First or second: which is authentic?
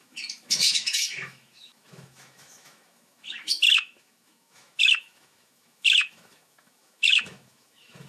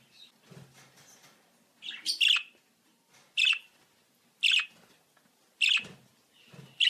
second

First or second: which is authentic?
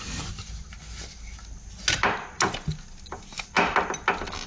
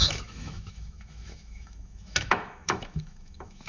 first